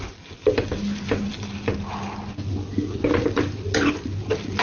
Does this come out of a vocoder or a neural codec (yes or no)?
no